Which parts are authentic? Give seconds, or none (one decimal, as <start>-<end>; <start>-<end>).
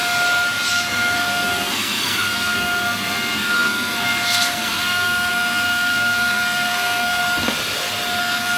0.0-0.7; 7.2-8.2